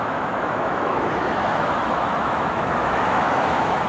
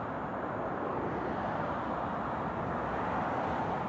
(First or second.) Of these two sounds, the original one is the second